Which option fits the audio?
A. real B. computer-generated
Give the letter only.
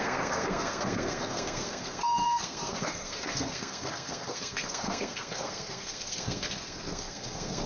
B